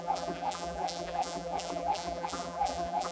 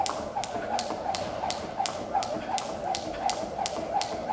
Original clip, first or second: second